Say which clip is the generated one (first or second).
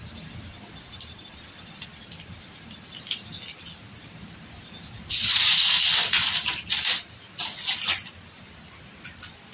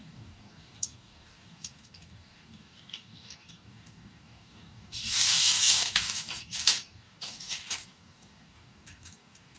second